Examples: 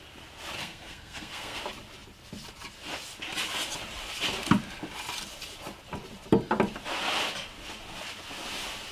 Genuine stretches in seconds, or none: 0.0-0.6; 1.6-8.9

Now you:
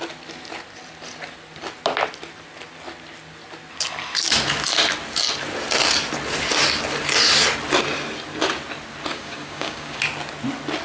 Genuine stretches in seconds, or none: 0.0-9.1; 10.0-10.8